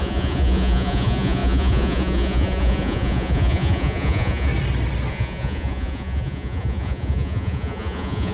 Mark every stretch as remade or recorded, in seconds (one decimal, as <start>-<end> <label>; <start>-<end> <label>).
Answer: 0.0-4.5 remade; 4.5-5.1 recorded; 5.1-8.3 remade